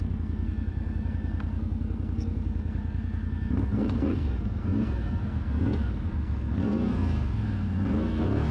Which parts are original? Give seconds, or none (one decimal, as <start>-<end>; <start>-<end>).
none